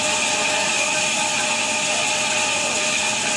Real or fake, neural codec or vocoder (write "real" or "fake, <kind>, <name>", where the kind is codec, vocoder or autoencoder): real